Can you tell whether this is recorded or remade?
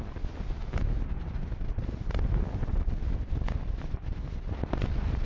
recorded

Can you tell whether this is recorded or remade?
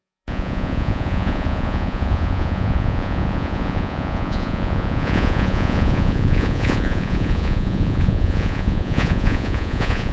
remade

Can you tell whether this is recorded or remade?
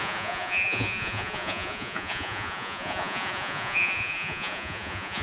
remade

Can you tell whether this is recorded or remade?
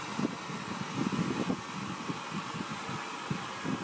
recorded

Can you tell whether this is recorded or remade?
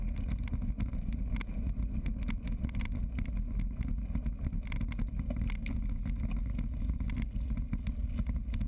recorded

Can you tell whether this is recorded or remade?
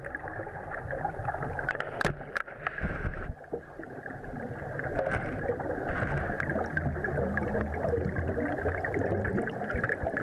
recorded